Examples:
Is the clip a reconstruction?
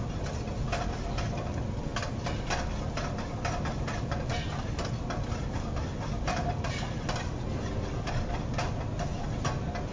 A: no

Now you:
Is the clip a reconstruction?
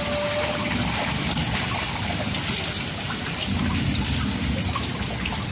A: no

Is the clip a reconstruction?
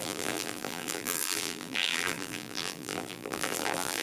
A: yes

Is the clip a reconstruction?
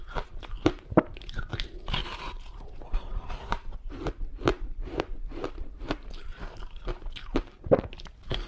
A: yes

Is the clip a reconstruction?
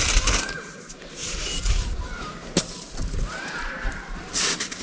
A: yes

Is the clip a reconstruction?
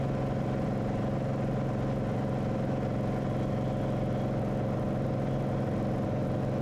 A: no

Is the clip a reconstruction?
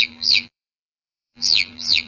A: yes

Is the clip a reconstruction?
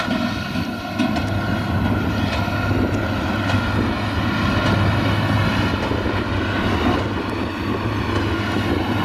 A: no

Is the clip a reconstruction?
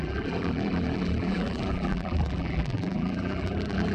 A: yes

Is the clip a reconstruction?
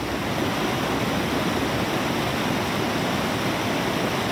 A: no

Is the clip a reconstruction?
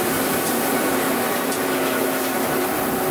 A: no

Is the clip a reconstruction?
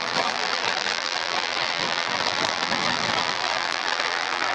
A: yes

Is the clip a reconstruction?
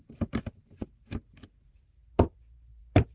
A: yes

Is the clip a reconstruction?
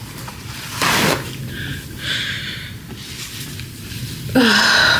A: yes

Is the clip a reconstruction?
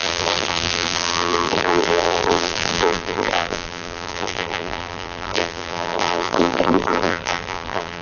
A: yes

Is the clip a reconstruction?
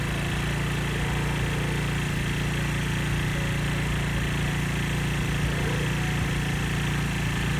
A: no